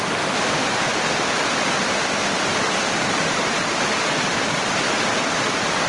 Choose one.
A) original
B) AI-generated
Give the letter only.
A